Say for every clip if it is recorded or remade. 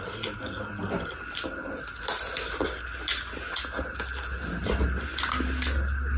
recorded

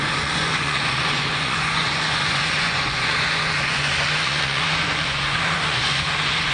remade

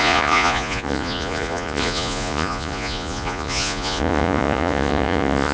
remade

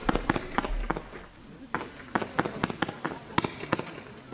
recorded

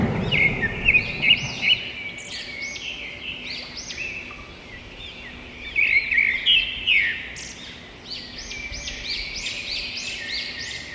recorded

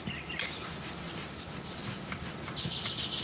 recorded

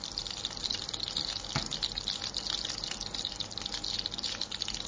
recorded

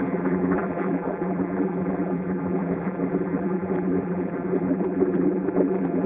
remade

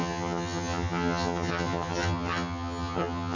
remade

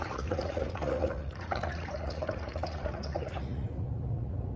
remade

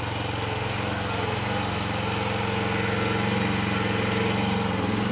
recorded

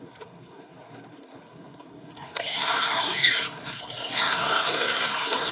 remade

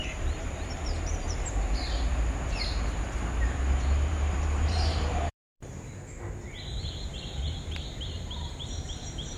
remade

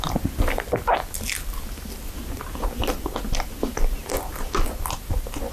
recorded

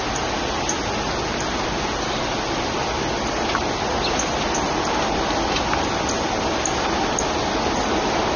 recorded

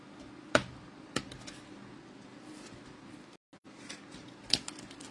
recorded